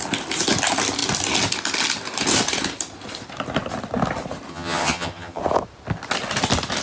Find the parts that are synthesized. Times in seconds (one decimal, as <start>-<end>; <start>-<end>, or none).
4.5-5.4